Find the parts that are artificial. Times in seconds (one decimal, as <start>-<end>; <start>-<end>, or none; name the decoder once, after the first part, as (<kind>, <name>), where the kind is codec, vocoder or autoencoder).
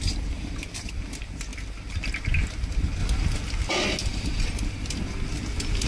none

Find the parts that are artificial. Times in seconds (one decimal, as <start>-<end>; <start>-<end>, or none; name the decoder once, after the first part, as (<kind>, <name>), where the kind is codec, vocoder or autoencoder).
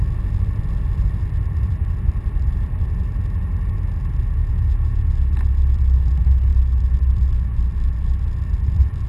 4.4-5.1 (vocoder, Vocos)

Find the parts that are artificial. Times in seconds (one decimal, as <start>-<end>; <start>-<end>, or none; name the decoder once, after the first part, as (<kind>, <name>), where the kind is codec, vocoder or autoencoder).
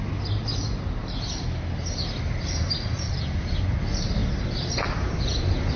none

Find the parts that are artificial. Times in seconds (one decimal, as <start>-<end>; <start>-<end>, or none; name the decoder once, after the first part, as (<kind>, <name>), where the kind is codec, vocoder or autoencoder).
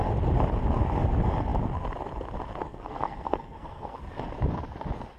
2.6-4.0 (codec, SNAC)